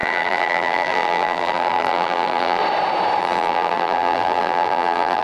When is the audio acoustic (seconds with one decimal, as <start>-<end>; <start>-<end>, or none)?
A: 2.6-3.2

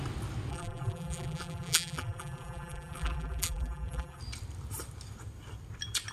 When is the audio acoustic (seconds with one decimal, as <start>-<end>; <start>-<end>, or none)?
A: 0.0-0.5; 4.2-6.1

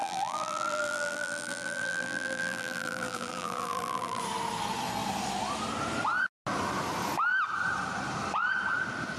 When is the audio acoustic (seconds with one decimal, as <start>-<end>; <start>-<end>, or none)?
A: 4.2-9.2

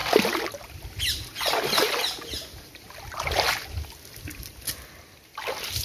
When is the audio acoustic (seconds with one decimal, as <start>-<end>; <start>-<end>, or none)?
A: 0.0-5.8

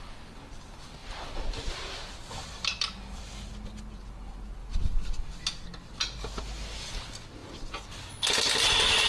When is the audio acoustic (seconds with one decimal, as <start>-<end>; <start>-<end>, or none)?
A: 0.0-1.0; 3.5-4.6; 5.4-9.1

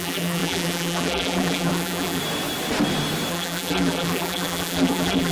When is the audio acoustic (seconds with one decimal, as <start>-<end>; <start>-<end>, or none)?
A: 2.2-3.3